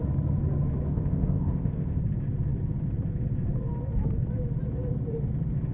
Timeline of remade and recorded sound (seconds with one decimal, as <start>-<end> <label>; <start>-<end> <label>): 0.0-0.9 recorded; 0.9-2.0 remade; 2.0-5.7 recorded